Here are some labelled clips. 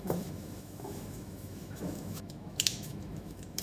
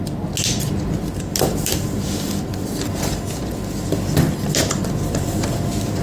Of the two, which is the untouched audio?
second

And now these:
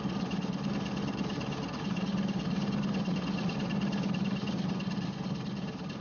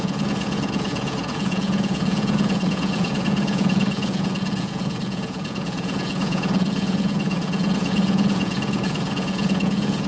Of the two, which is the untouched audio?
first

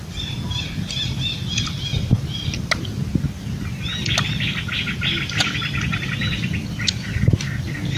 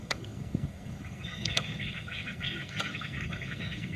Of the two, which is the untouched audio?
first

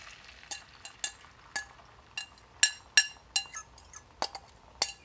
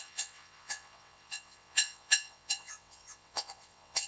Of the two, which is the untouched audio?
first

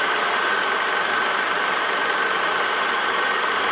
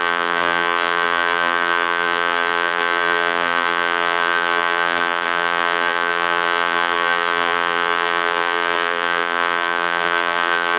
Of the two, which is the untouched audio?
first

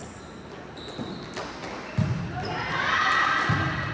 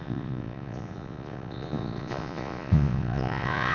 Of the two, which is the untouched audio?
first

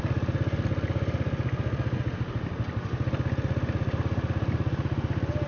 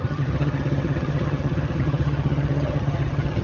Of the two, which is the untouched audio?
first